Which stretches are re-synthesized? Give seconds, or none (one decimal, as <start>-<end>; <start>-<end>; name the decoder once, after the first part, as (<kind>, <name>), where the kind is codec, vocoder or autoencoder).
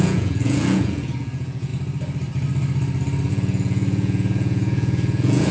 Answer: 0.0-1.7 (vocoder, Vocos); 3.3-5.5